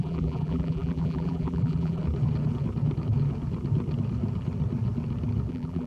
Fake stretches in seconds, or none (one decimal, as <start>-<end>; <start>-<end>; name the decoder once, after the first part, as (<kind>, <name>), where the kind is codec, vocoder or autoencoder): 0.0-2.0 (vocoder, BigVGAN v2); 5.5-5.9